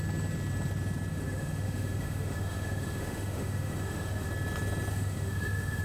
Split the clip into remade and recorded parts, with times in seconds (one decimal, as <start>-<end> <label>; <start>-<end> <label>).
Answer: 0.0-1.1 recorded; 1.1-4.3 remade; 4.3-4.9 recorded; 4.9-5.8 remade